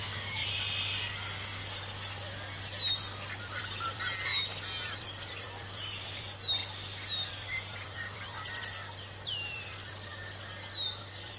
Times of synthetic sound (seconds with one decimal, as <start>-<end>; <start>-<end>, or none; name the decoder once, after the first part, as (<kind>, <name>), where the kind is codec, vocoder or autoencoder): 0.0-0.4 (vocoder, BigVGAN v2); 3.4-4.3; 4.8-6.6; 7.3-10.1; 11.0-11.4